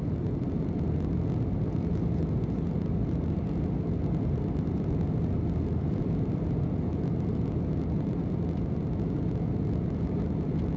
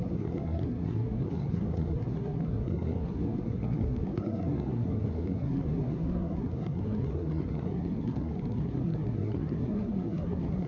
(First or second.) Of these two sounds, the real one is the first